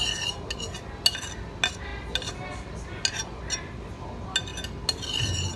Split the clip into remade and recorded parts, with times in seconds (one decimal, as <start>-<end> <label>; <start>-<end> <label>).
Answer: 0.0-5.6 recorded